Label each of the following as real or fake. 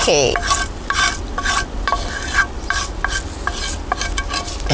real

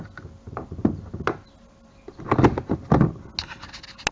real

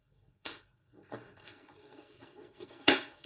fake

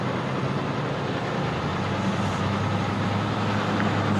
real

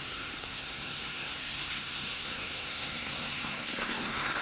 fake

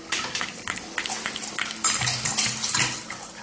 real